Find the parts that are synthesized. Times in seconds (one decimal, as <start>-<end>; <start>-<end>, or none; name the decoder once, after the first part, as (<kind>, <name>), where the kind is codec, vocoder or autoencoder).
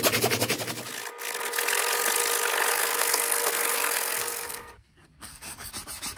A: 2.7-5.7 (codec, SNAC)